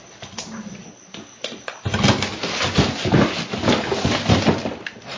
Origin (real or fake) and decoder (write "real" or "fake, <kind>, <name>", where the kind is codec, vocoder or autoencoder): real